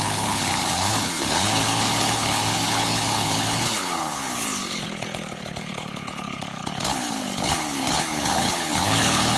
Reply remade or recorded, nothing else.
remade